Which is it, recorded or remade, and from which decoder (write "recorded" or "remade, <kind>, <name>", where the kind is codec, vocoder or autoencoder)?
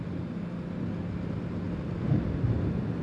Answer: recorded